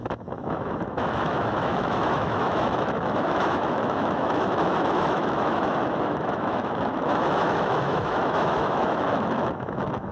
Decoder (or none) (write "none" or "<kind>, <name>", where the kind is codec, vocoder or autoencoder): autoencoder, DAC-VAE